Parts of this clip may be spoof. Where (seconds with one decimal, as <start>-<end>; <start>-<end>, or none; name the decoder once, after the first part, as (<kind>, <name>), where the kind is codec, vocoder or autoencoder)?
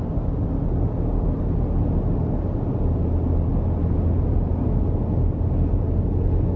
none